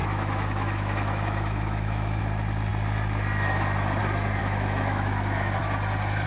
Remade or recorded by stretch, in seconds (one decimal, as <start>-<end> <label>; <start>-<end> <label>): 0.0-2.2 remade; 2.2-4.4 recorded; 4.4-5.6 remade; 5.6-6.3 recorded